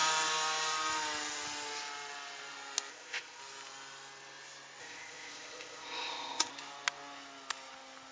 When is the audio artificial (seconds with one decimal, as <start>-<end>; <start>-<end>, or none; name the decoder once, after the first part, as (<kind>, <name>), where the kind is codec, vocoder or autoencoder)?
2.9-3.4 (codec, ZipCodec); 4.8-6.5